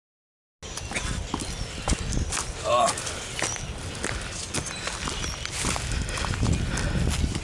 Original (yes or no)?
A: yes